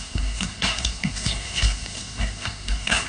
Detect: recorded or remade remade